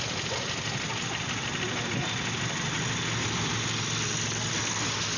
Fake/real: real